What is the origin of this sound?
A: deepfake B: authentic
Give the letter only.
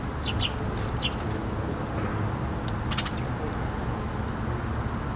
B